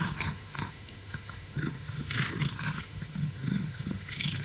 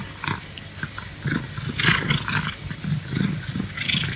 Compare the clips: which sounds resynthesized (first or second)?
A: first